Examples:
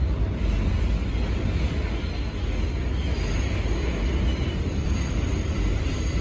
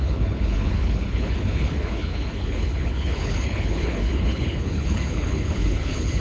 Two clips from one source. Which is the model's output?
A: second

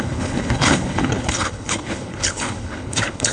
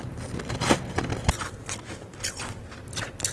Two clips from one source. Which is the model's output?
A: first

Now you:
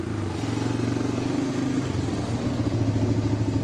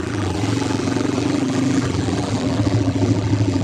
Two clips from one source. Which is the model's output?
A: second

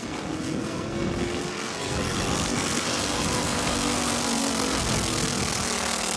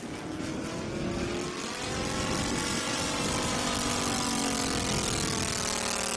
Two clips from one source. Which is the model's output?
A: first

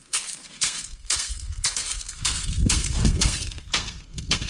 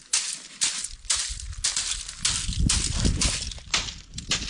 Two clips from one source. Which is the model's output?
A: first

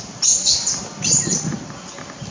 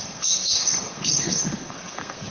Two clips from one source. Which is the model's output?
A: second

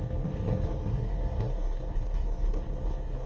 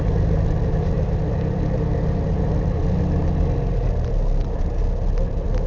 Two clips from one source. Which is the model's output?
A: first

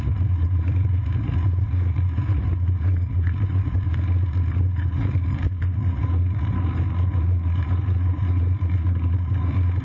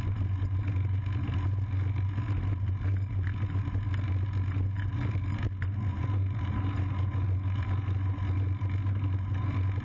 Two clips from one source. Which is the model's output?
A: first